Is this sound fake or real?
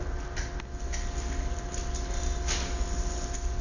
real